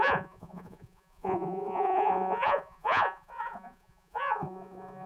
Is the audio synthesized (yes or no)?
yes